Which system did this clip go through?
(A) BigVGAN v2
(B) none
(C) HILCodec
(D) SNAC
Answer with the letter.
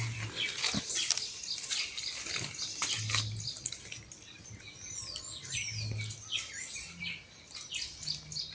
B